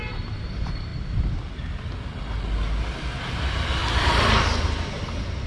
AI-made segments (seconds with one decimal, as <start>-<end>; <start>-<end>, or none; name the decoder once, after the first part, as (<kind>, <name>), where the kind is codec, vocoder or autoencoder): 0.0-0.9 (vocoder, BigVGAN v2); 3.2-3.8; 4.6-5.5

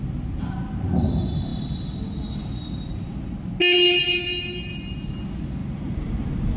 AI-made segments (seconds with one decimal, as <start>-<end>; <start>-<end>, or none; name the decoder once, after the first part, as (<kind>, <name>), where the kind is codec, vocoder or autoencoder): 4.0-4.8 (vocoder, BigVGAN v2); 5.6-6.6